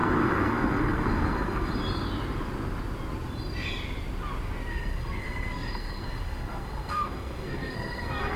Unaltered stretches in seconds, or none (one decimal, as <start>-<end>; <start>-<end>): 1.7-4.7